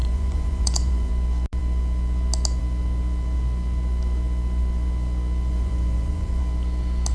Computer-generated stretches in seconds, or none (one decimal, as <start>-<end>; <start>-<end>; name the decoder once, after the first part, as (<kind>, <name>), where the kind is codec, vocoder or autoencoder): 0.0-1.1 (vocoder, Vocos); 5.5-6.4